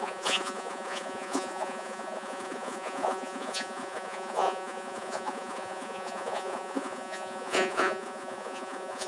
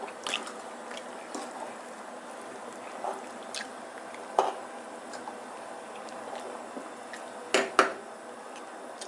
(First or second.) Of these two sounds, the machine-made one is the first